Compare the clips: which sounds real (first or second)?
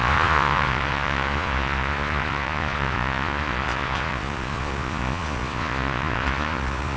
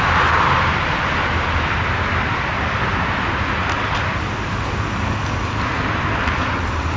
second